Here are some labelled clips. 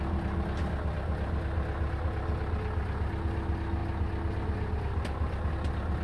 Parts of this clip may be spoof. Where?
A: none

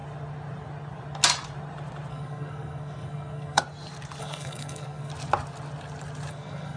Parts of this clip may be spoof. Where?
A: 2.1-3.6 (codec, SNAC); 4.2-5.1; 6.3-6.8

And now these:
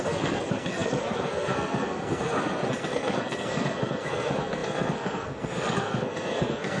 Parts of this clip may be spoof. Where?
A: 0.0-6.8 (codec, SNAC)

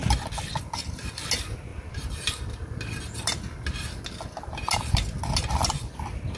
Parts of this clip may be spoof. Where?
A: none

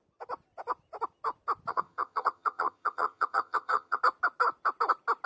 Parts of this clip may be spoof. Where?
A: 1.7-4.0 (vocoder, HiFi-GAN)